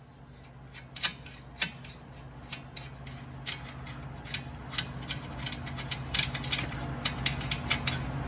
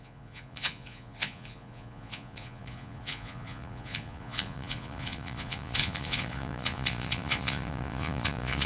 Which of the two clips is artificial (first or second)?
second